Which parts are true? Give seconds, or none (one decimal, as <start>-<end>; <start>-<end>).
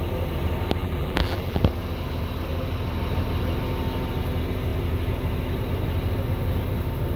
0.0-0.8; 1.6-7.2